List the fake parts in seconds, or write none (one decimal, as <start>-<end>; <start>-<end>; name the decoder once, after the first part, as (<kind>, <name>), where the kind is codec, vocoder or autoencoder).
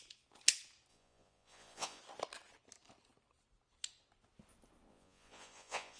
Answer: 0.9-2.0 (vocoder, Vocos); 4.9-6.0